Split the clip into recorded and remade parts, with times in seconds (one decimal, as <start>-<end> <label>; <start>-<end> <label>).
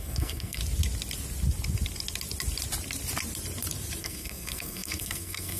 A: 0.0-0.6 remade; 0.6-4.0 recorded; 4.0-5.6 remade